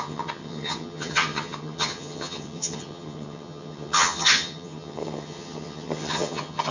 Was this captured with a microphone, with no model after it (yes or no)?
no